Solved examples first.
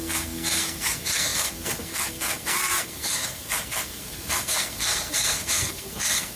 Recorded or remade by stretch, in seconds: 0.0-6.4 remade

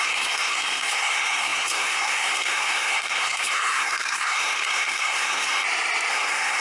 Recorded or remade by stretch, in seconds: 0.0-5.5 remade; 5.5-6.1 recorded; 6.1-6.6 remade

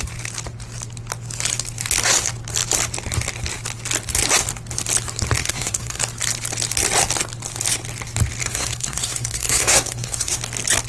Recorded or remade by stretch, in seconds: 0.0-5.4 recorded; 5.4-6.0 remade; 6.0-8.4 recorded; 8.4-10.4 remade; 10.4-10.9 recorded

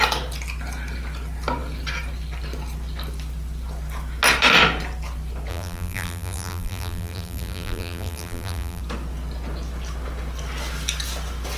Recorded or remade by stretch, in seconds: 0.0-5.5 recorded; 5.5-8.8 remade; 8.8-11.6 recorded

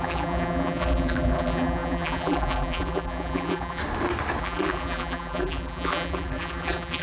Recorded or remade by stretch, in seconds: 0.0-3.8 remade; 3.8-4.4 recorded; 4.4-7.0 remade

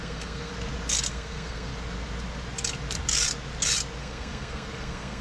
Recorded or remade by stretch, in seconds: 0.0-0.5 remade; 0.5-1.1 recorded; 1.1-1.7 remade; 1.7-4.0 recorded; 4.0-5.2 remade

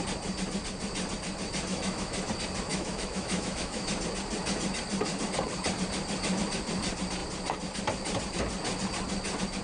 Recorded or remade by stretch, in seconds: 0.0-1.7 recorded; 1.7-2.3 remade; 2.3-2.7 recorded; 2.7-3.9 remade; 3.9-9.6 recorded